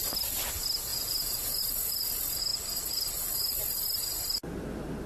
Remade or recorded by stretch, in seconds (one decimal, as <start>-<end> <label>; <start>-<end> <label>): 0.0-0.9 recorded; 0.9-1.6 remade; 1.6-5.1 recorded